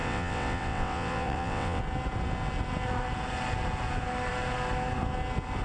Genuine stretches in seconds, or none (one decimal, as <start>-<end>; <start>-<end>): 1.8-5.6